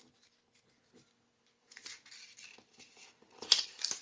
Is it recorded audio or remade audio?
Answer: recorded